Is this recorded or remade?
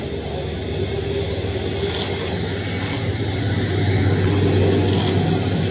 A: recorded